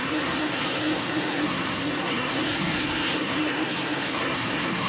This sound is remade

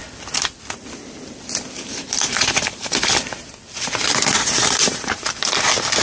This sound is remade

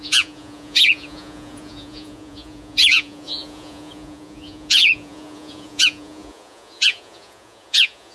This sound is remade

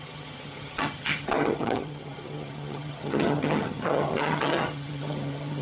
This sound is remade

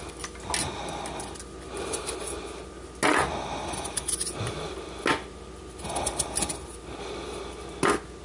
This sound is recorded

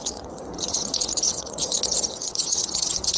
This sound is remade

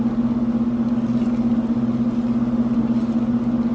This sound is recorded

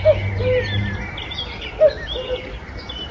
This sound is recorded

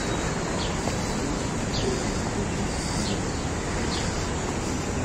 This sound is recorded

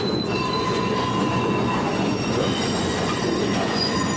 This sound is remade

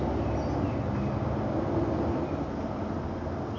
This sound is recorded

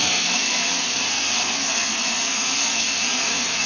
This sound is remade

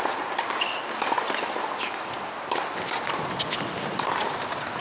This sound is recorded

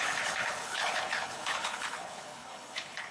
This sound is remade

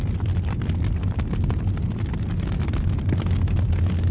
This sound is recorded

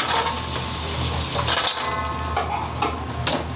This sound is recorded